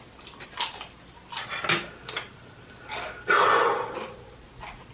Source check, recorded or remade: recorded